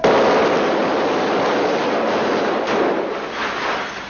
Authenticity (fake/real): real